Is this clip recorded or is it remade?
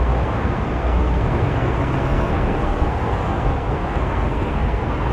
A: remade